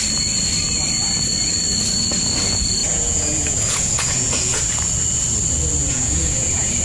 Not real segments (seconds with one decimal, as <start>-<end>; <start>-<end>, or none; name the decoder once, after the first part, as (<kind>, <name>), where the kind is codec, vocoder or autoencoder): 2.8-4.6 (vocoder, Vocos); 5.8-6.8